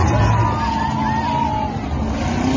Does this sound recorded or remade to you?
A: recorded